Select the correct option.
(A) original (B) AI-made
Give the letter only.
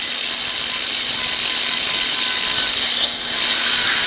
A